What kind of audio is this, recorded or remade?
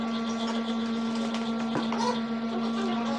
recorded